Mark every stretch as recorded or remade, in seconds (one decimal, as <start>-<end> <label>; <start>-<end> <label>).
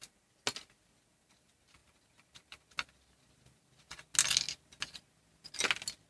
0.0-6.1 recorded